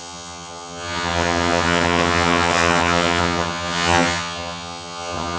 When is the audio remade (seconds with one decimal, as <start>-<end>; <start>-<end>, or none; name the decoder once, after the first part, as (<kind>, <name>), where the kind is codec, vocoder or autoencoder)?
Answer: 0.0-5.4 (vocoder, HiFi-GAN)